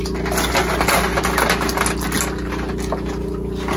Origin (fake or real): real